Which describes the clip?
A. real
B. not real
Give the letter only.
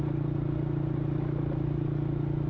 A